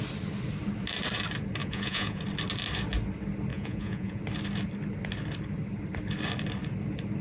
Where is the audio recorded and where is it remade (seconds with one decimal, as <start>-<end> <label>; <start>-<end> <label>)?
0.0-1.6 recorded; 1.6-2.2 remade; 2.2-3.5 recorded; 3.5-4.2 remade; 4.2-7.2 recorded